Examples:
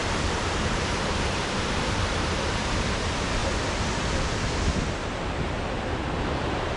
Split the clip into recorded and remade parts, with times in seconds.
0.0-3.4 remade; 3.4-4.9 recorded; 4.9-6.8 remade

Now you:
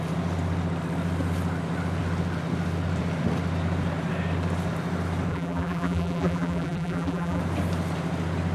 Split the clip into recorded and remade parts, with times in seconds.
0.0-5.3 recorded; 5.3-7.4 remade; 7.4-8.5 recorded

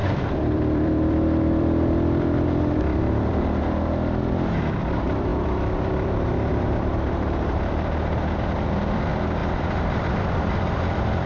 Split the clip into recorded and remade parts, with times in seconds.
0.0-3.6 remade; 3.6-5.3 recorded; 5.3-7.6 remade; 7.6-9.4 recorded; 9.4-11.3 remade

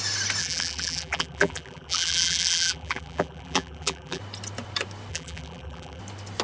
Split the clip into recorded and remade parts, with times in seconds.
0.0-0.4 recorded; 0.4-4.2 remade; 4.2-5.1 recorded; 5.1-6.0 remade; 6.0-6.4 recorded

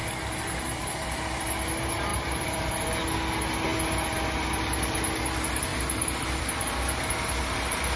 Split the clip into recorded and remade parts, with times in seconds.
0.0-1.2 remade; 1.2-2.1 recorded; 2.1-2.7 remade; 2.7-8.0 recorded